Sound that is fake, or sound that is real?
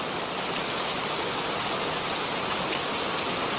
real